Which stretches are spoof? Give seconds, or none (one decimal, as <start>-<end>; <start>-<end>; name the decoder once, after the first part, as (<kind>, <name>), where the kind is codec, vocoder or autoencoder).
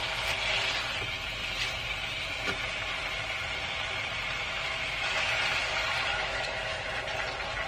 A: 4.4-5.4 (autoencoder, DAC-VAE); 6.1-6.9